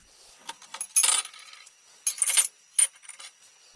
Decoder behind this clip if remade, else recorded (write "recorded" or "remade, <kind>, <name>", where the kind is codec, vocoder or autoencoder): recorded